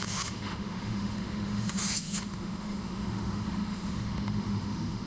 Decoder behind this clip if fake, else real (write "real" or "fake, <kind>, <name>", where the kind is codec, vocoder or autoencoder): fake, autoencoder, DAC-VAE